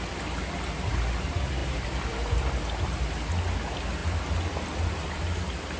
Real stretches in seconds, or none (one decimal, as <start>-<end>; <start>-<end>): 0.0-1.6; 2.3-5.8